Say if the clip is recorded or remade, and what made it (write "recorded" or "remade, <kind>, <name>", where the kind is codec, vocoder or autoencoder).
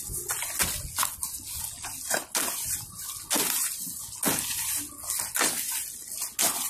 recorded